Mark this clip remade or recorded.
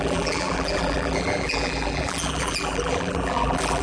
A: remade